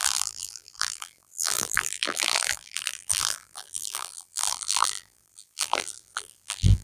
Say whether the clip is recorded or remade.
remade